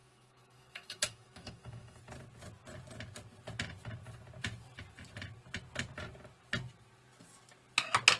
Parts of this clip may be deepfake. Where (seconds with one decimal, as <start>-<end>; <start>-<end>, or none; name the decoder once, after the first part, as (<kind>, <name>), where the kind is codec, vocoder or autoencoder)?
0.0-2.0 (autoencoder, DAC-VAE)